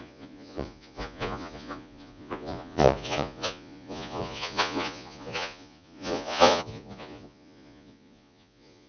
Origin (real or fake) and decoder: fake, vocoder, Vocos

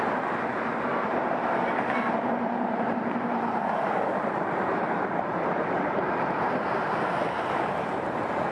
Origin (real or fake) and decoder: fake, vocoder, BigVGAN v2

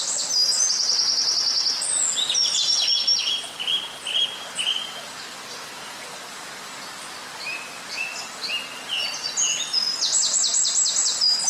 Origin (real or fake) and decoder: real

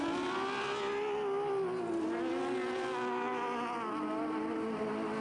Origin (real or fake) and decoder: real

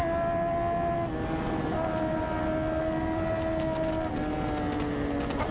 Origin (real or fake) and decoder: real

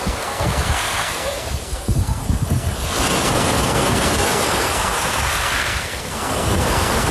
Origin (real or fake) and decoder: fake, codec, SNAC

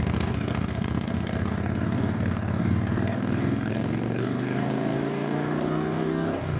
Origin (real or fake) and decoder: fake, codec, DAC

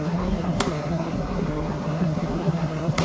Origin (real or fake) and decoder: fake, codec, SNAC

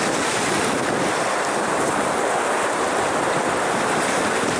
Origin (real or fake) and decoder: real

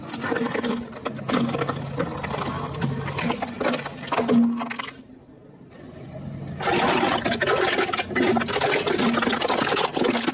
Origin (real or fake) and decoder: real